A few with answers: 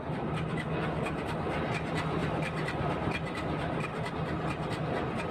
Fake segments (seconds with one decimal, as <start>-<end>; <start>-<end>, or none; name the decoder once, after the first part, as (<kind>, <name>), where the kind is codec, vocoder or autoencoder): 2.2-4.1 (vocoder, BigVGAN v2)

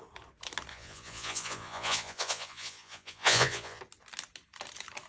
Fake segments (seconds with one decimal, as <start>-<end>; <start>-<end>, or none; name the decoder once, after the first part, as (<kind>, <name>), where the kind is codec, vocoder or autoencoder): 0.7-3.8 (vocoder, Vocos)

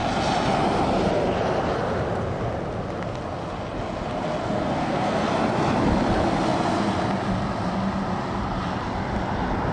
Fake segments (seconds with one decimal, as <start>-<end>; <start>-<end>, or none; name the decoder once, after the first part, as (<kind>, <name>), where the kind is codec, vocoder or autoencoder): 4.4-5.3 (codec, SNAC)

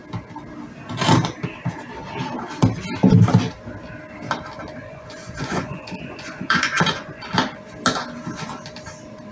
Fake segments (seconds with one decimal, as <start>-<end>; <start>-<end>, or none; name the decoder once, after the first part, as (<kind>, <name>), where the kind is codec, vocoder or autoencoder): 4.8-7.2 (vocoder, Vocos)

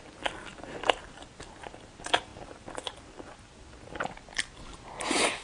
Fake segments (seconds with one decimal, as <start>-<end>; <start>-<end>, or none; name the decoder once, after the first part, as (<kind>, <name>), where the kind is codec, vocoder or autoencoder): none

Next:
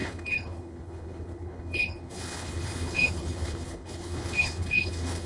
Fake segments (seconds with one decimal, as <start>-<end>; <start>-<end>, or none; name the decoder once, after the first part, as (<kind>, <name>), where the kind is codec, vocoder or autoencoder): 0.0-5.3 (codec, HILCodec)